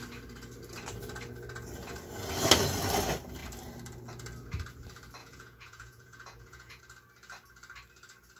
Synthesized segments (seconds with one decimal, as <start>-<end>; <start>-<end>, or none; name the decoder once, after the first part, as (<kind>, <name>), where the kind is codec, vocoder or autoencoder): 5.2-6.8 (vocoder, Vocos)